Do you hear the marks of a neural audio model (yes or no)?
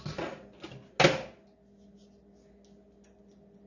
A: no